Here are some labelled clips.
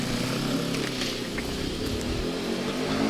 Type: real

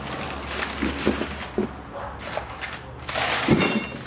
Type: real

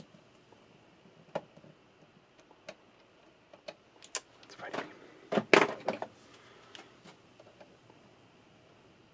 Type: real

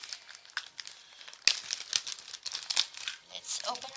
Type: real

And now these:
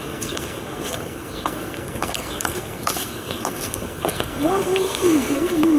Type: fake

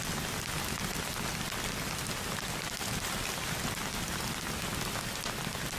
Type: real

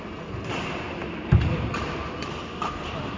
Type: real